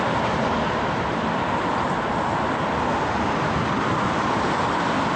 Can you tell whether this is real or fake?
real